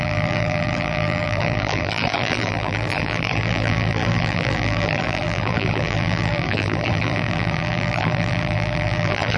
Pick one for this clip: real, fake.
fake